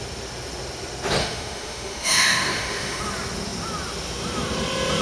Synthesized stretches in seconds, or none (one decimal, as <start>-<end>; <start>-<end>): 1.2-3.0

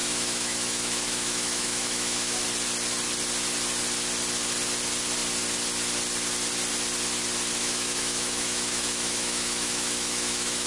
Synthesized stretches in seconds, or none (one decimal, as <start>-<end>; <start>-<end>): 0.0-2.4; 7.6-10.7

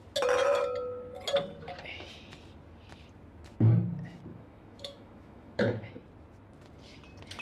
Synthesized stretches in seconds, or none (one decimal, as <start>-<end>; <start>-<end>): 4.3-5.9

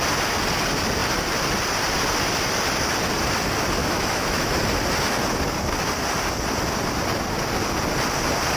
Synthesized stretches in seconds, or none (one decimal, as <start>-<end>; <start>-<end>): 3.8-4.5

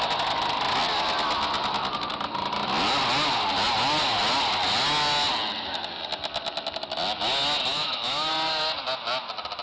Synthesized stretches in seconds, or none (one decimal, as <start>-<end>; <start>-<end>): 7.7-8.3

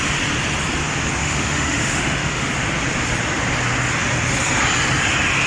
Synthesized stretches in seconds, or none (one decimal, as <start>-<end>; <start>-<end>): 1.2-2.5